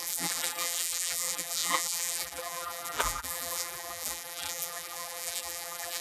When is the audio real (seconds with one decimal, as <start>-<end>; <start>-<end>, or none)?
none